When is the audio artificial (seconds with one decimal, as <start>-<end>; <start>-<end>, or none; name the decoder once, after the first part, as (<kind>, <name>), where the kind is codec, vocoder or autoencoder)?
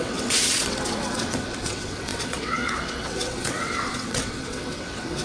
0.0-5.2 (vocoder, WaveNeXt)